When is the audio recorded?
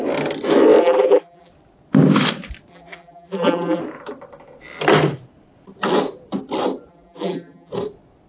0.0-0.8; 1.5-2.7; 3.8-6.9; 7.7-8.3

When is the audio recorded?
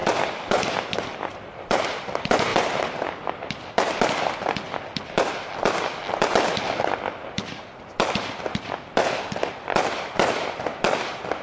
1.8-11.4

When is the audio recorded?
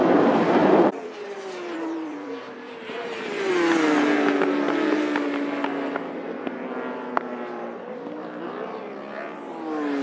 0.0-0.6; 3.5-10.0